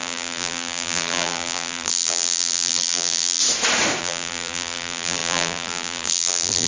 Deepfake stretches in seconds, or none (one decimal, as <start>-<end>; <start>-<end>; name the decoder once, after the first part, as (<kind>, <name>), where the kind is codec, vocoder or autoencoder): 0.0-3.4 (vocoder, BigVGAN v2); 4.0-6.7